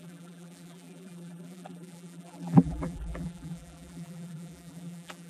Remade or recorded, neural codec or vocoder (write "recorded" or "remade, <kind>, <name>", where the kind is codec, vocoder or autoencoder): remade, vocoder, BigVGAN v2